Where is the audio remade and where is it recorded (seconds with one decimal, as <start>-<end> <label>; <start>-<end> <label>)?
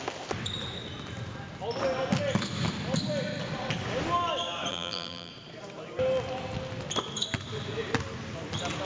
0.0-4.7 recorded; 4.7-5.3 remade; 5.3-8.8 recorded